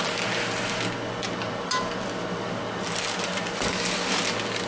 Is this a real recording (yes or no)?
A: yes